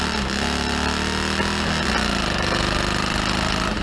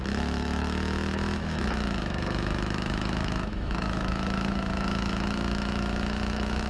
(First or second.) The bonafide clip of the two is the first